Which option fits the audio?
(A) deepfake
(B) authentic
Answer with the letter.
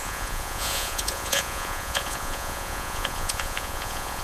A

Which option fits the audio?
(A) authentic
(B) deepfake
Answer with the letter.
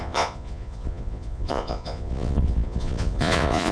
B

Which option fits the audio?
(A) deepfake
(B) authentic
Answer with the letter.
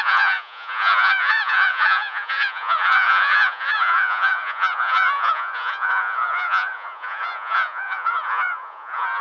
A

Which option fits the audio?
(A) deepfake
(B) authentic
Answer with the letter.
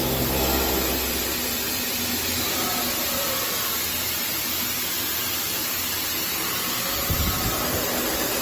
B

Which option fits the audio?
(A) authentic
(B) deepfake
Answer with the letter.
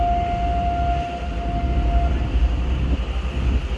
A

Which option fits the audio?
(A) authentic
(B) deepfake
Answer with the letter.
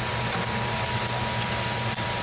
A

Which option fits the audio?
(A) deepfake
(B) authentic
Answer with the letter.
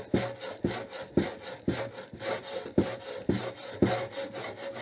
B